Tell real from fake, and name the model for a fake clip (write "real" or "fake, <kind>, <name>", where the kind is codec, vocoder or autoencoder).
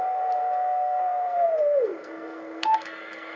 fake, codec, SNAC